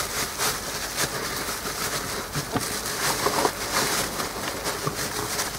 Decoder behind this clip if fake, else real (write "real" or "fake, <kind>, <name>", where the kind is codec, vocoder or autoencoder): real